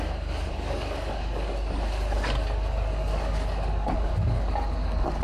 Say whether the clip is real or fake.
fake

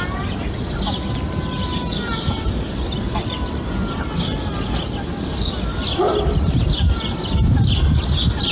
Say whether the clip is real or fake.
real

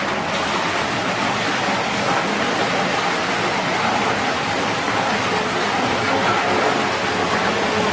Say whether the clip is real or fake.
real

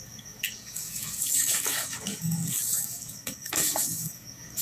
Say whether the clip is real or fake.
fake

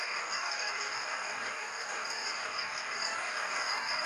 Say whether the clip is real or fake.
fake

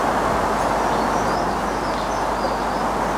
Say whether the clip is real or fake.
real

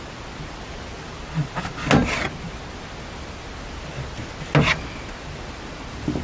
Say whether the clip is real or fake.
real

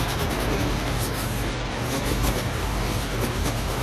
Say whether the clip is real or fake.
fake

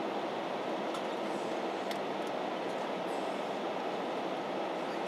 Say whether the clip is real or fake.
real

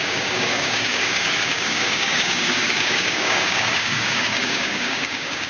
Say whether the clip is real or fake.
fake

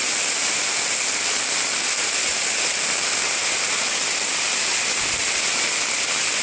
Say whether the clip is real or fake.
real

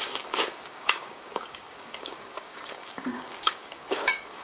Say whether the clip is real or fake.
fake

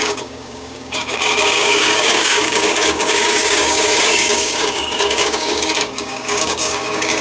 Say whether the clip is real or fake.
fake